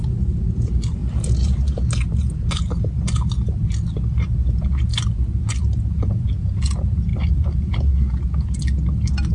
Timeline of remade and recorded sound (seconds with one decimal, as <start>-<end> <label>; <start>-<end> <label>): 0.0-9.3 recorded

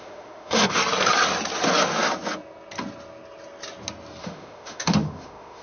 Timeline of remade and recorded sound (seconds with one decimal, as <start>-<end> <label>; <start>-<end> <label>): 0.0-0.8 remade; 0.8-4.2 recorded; 4.2-5.6 remade

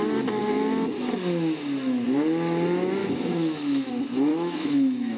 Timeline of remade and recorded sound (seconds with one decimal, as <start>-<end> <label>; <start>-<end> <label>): 0.0-3.0 recorded; 3.0-3.9 remade; 3.9-4.3 recorded; 4.3-5.2 remade

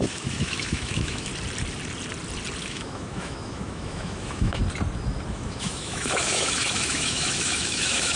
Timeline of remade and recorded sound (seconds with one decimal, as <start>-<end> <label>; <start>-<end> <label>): 0.0-1.3 remade; 1.3-2.6 recorded; 2.6-4.6 remade; 4.6-5.3 recorded; 5.3-8.2 remade

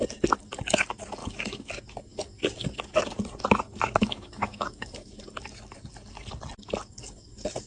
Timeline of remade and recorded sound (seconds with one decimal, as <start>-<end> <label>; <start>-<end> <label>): 0.0-1.2 recorded; 1.2-1.7 remade; 1.7-4.0 recorded; 4.0-5.1 remade; 5.1-7.7 recorded

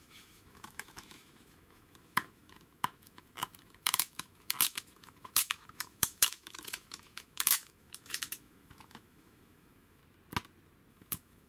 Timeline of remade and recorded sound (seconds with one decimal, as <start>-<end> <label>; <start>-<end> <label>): 0.0-10.0 remade; 10.0-10.9 recorded; 10.9-11.5 remade

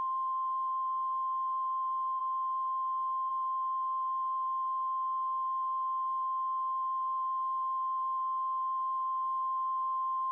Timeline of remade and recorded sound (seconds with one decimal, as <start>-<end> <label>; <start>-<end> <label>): 0.0-10.3 recorded

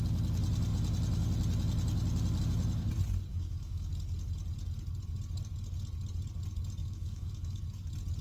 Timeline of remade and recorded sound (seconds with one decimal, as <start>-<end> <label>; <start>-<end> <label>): 0.0-3.3 recorded; 3.3-3.9 remade; 3.9-6.8 recorded; 6.8-7.6 remade; 7.6-8.2 recorded